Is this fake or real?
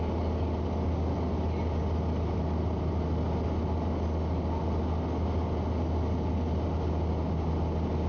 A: real